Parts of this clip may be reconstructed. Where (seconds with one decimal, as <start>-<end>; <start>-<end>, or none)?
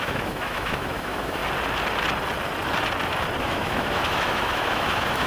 0.0-1.4; 3.4-5.3